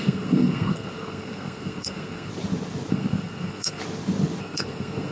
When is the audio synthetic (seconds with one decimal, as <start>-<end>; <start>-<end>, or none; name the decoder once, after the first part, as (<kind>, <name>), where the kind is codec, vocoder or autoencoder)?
0.0-2.3 (codec, SNAC); 2.9-3.8; 4.4-5.1